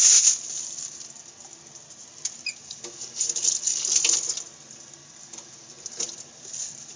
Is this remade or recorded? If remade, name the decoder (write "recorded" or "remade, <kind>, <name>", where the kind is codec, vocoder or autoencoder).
recorded